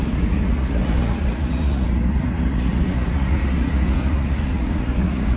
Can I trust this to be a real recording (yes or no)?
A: no